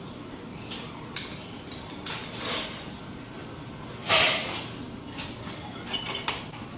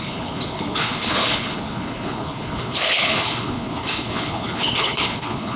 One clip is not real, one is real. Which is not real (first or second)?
second